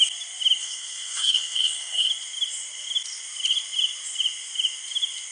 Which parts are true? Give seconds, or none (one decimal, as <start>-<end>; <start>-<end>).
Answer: 0.0-0.6; 2.1-5.3